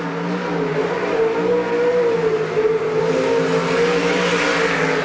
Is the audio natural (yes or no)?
yes